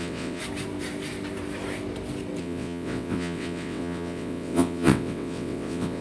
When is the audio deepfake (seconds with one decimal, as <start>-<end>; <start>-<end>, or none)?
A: 0.0-0.4; 2.4-6.0